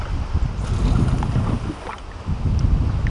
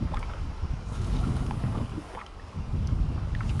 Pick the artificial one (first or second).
second